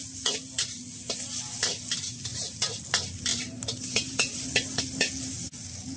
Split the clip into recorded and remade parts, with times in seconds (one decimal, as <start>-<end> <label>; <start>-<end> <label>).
0.0-2.3 recorded; 2.3-2.8 remade; 2.8-3.3 recorded; 3.3-4.4 remade; 4.4-6.0 recorded